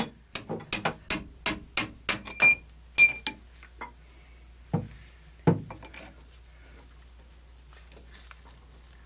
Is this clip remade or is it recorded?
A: recorded